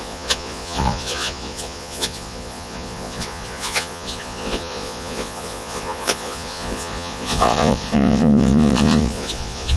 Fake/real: fake